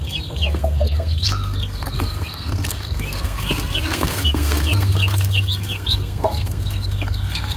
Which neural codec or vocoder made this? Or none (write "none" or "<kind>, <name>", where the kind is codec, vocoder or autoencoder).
codec, SNAC